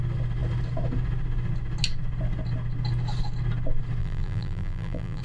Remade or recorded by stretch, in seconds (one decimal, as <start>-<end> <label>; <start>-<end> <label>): 0.0-4.0 recorded; 4.0-5.2 remade